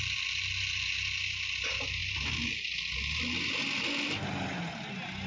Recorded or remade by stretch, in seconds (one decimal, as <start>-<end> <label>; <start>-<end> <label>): 0.0-5.3 recorded